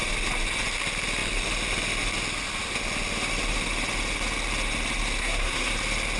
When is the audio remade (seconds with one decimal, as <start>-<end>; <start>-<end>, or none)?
5.2-5.7

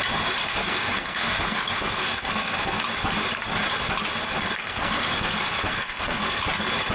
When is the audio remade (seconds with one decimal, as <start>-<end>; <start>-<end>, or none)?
0.4-2.8; 4.6-6.4